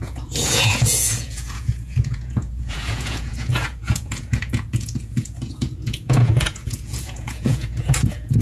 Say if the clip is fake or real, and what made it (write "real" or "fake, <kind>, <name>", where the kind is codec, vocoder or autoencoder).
fake, vocoder, Vocos